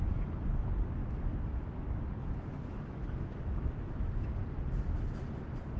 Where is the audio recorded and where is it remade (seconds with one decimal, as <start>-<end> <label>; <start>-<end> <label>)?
0.0-1.0 recorded; 1.0-4.4 remade; 4.4-5.8 recorded